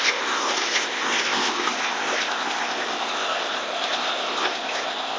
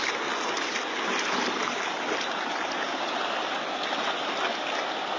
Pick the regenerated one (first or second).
first